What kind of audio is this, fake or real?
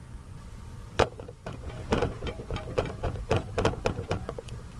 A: fake